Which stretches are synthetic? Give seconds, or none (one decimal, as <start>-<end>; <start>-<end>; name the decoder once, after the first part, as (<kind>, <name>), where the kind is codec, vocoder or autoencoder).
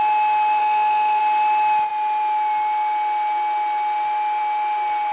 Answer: 0.6-1.2 (autoencoder, DAC-VAE)